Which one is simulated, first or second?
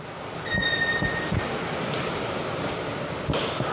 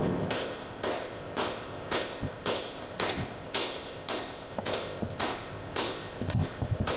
second